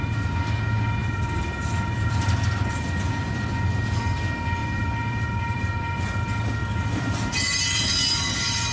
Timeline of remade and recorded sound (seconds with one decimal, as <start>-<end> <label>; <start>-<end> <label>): 0.0-1.0 recorded; 1.0-3.5 remade; 3.5-4.6 recorded; 4.6-5.7 remade; 5.7-6.6 recorded; 6.6-7.6 remade; 7.6-8.7 recorded